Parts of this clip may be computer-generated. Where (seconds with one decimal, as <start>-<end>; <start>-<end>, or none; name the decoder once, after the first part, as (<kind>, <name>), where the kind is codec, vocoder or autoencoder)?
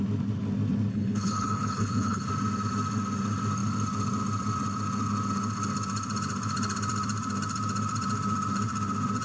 0.9-2.3 (codec, HILCodec)